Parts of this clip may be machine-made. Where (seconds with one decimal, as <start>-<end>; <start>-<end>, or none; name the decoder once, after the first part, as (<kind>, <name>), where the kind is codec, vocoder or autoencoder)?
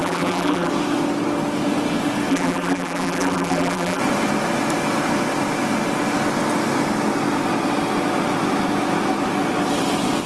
0.0-0.7 (vocoder, BigVGAN v2); 2.3-4.0